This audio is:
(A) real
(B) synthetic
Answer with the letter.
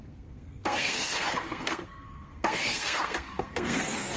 B